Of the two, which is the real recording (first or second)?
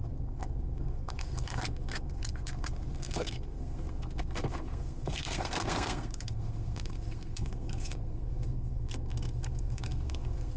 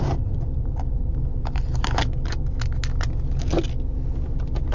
second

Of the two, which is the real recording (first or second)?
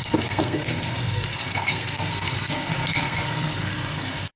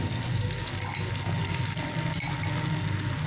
second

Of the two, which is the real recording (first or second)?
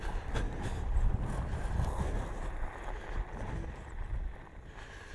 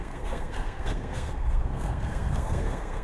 first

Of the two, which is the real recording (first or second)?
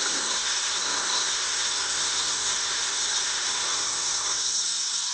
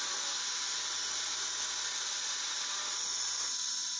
second